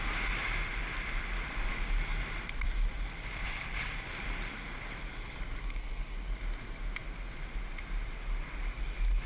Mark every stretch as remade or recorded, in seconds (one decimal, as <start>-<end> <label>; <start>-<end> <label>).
0.0-0.7 recorded; 0.7-1.7 remade; 1.7-2.1 recorded; 2.1-5.9 remade; 5.9-9.3 recorded